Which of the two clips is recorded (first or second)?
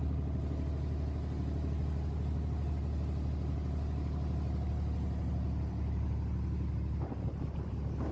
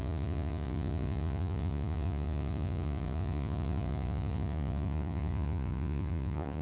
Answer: first